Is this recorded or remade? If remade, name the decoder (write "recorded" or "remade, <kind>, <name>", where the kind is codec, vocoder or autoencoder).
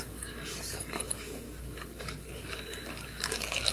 remade, codec, DAC